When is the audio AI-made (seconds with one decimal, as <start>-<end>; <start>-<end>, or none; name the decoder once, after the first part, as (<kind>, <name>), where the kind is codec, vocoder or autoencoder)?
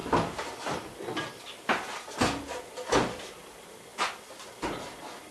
none